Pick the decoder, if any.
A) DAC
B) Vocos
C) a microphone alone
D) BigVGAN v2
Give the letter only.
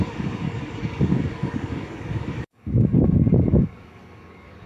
A